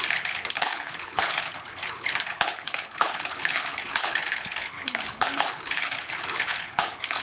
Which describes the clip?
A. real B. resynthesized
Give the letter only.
B